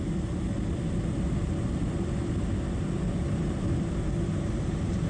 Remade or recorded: recorded